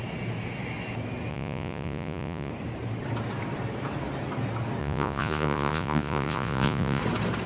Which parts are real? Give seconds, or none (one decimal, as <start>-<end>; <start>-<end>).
0.0-1.3; 2.5-4.8; 7.0-7.5